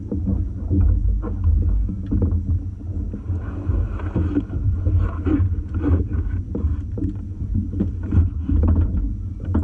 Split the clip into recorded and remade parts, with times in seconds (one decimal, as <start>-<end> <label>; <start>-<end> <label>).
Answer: 0.0-5.6 recorded; 5.6-9.6 remade